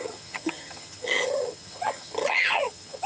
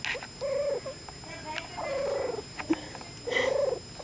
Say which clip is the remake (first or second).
first